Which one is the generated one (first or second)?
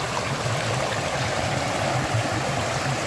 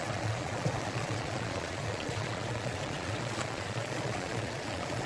second